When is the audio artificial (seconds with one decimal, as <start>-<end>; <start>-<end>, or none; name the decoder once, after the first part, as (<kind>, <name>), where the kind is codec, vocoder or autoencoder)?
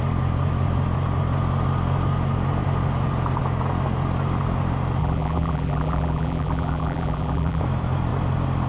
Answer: 5.0-7.6 (vocoder, BigVGAN v2)